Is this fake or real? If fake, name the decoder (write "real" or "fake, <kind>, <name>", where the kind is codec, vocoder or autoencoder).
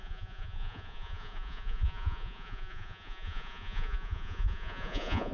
fake, vocoder, Vocos